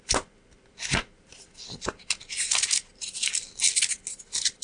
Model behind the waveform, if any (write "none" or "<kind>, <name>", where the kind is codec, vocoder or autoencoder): none